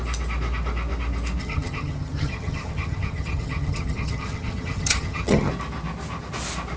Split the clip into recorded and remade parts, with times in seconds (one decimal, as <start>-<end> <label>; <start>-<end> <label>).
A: 0.0-1.4 recorded; 1.4-5.5 remade; 5.5-6.8 recorded